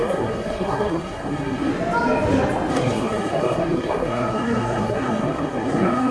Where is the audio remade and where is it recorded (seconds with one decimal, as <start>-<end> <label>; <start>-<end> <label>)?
0.0-1.7 remade; 1.7-2.7 recorded; 2.7-6.1 remade